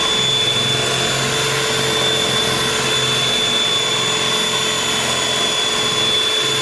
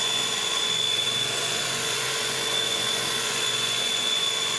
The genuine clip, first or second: first